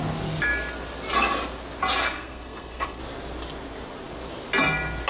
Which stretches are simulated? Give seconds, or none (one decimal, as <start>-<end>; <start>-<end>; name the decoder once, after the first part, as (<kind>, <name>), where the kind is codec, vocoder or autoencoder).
2.0-3.0 (codec, SNAC)